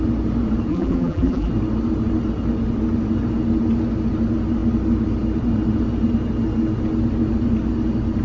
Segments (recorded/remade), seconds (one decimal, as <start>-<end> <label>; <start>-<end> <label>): 0.0-0.7 recorded; 0.7-1.5 remade; 1.5-8.2 recorded